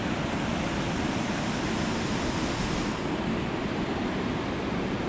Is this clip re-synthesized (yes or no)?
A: no